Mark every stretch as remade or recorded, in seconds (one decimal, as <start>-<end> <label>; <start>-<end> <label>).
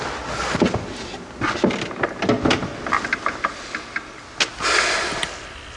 0.0-5.8 recorded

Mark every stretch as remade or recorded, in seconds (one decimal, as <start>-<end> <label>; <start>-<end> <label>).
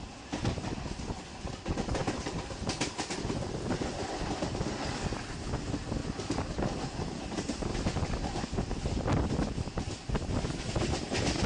0.0-2.0 recorded; 2.0-3.9 remade; 3.9-11.5 recorded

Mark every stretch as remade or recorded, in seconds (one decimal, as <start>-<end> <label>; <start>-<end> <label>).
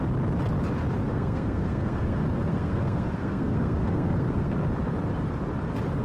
0.0-1.1 recorded; 1.1-4.7 remade; 4.7-6.0 recorded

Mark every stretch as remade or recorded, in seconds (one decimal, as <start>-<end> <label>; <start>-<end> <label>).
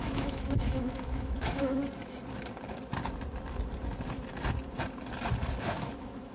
0.0-1.8 remade; 1.8-5.6 recorded; 5.6-6.3 remade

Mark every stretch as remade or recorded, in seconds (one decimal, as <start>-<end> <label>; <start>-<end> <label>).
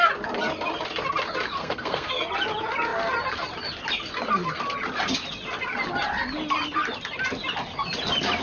0.0-1.6 recorded; 1.6-2.3 remade; 2.3-8.4 recorded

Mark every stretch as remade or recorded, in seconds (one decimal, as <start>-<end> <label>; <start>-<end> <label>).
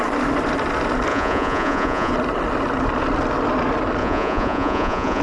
0.0-1.1 recorded; 1.1-2.1 remade; 2.1-4.0 recorded; 4.0-5.2 remade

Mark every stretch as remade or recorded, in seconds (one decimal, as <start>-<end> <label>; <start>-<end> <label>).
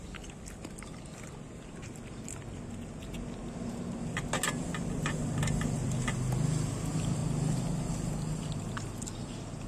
0.0-9.7 recorded